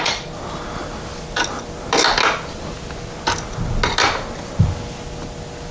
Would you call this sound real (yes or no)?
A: yes